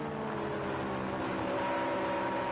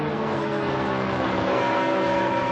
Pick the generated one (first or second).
second